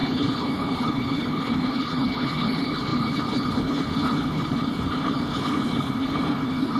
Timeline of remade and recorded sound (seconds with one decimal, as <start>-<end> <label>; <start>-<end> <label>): 0.0-6.8 remade